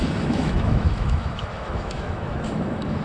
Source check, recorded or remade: remade